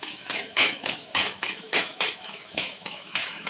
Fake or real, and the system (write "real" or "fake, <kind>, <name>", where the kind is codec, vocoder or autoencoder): fake, autoencoder, DAC-VAE